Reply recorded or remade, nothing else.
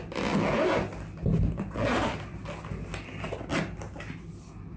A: recorded